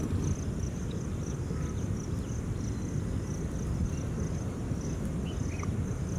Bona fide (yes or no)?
yes